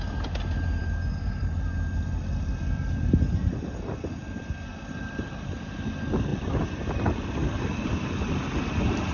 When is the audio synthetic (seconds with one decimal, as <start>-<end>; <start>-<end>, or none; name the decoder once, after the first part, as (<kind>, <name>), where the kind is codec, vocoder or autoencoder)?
4.7-5.8 (vocoder, BigVGAN v2); 6.3-6.9; 7.4-8.3